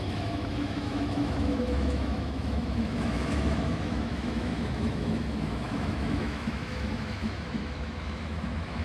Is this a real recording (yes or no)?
no